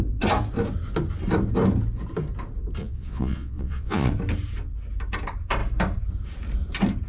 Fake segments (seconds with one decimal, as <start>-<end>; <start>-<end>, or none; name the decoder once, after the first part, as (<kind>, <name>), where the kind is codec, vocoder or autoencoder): 2.8-4.1 (vocoder, Vocos)